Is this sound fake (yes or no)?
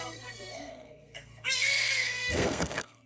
yes